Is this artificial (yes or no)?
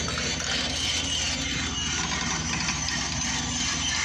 no